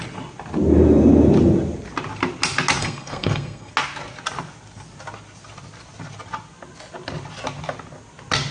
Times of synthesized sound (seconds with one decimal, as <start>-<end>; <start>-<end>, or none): 2.8-3.7